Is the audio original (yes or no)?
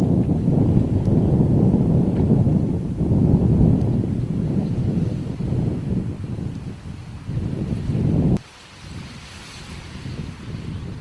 yes